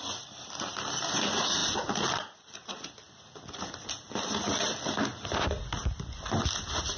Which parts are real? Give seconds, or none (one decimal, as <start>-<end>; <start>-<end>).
0.0-7.0

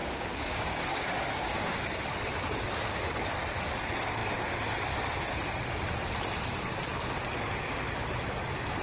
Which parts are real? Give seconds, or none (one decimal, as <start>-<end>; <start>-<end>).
2.0-8.8

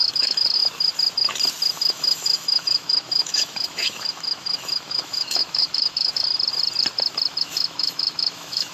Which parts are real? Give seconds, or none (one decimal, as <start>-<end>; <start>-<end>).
0.6-1.7; 6.3-7.4

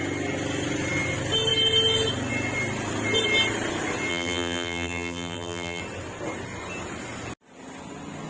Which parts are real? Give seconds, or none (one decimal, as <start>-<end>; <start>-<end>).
0.0-4.1; 5.8-8.3

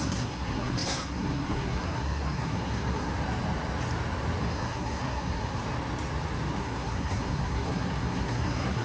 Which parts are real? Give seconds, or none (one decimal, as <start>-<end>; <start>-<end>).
3.1-4.4; 5.6-6.6